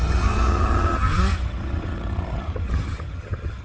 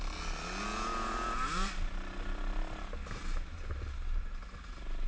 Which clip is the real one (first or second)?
second